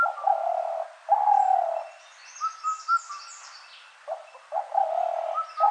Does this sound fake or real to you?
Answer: real